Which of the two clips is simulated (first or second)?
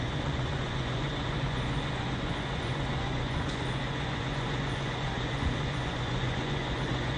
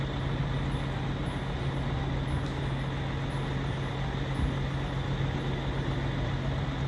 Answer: first